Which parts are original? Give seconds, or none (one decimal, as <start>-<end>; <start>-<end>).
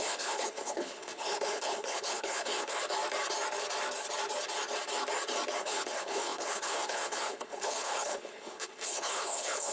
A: 2.8-5.6